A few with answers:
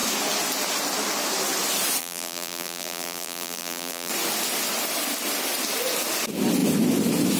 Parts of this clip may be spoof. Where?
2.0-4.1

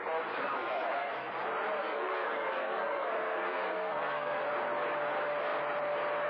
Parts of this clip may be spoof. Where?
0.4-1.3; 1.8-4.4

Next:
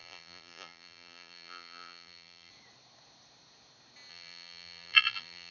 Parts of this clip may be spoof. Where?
0.0-2.5; 4.1-5.5

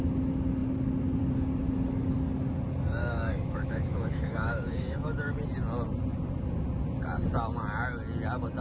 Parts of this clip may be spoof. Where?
3.0-5.4

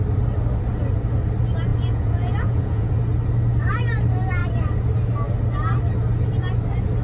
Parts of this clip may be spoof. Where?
1.7-2.9